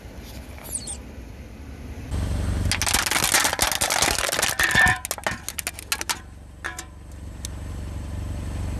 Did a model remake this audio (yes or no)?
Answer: no